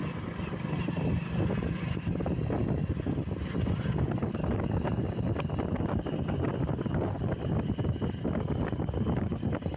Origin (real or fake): real